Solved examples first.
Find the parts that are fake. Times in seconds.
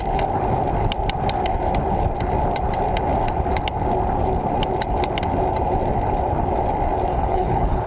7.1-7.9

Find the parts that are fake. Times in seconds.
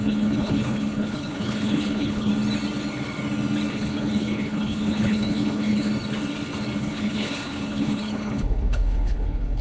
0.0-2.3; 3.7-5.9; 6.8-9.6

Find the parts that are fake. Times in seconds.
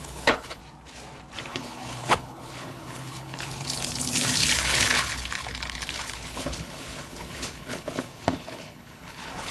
0.0-0.6; 1.5-9.5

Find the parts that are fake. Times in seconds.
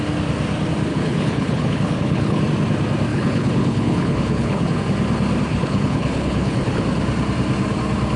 0.9-2.4; 3.1-4.8; 5.5-6.8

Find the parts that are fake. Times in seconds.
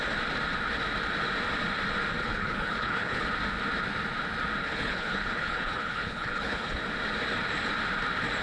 2.2-3.3; 4.6-6.7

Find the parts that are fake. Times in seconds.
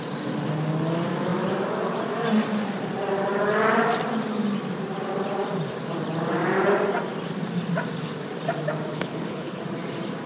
8.9-9.6